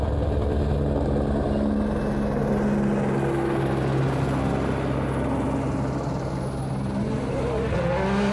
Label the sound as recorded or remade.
recorded